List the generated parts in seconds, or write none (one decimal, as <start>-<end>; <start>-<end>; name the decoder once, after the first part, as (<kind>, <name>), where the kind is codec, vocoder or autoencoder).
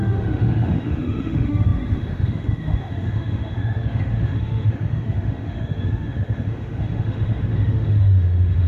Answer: 0.0-8.7 (autoencoder, DAC-VAE)